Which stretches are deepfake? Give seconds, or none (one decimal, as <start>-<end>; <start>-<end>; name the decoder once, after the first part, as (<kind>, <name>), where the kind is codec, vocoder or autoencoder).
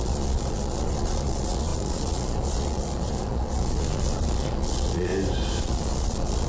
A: 0.0-5.1 (vocoder, Vocos); 5.6-6.5